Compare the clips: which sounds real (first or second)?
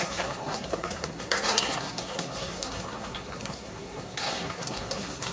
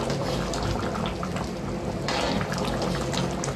second